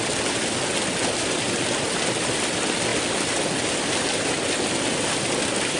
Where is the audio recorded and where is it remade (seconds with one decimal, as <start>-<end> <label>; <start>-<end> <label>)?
0.0-5.8 recorded

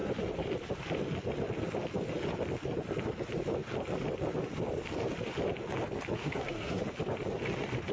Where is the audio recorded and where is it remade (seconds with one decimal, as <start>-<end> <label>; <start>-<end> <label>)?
0.0-6.2 recorded; 6.2-6.8 remade; 6.8-7.9 recorded

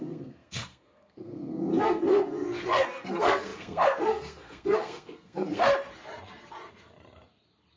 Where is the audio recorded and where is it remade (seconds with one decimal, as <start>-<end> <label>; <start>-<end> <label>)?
0.0-5.7 remade; 5.7-7.8 recorded

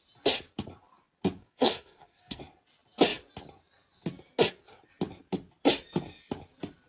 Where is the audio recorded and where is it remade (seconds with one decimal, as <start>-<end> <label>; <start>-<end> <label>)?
0.0-1.4 recorded; 1.4-2.4 remade; 2.4-6.9 recorded

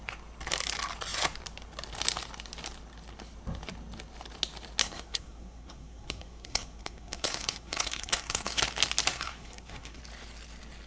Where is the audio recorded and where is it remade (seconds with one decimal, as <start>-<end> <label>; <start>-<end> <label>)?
0.0-4.8 recorded; 4.8-8.6 remade; 8.6-9.1 recorded; 9.1-10.0 remade; 10.0-10.9 recorded

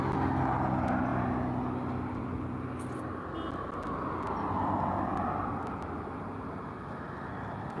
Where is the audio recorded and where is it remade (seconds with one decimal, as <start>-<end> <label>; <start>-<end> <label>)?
0.0-7.8 recorded

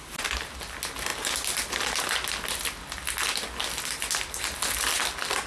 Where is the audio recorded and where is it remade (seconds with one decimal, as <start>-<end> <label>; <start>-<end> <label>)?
0.0-5.5 recorded

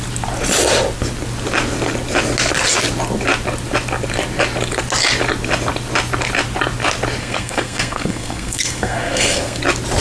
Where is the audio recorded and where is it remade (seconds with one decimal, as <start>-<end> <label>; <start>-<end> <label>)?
0.0-7.2 recorded; 7.2-9.6 remade; 9.6-10.0 recorded